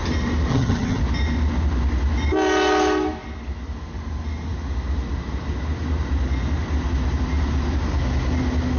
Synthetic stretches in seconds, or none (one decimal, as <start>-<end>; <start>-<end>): 0.5-1.0